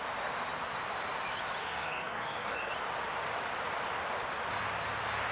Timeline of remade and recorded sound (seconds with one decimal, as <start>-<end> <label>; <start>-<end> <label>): 0.0-1.6 recorded; 1.6-2.7 remade; 2.7-5.3 recorded